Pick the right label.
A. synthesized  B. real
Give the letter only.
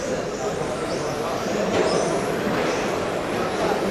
A